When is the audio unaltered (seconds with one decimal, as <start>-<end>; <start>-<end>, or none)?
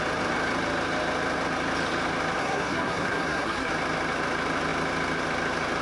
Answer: 0.0-2.4; 3.7-5.8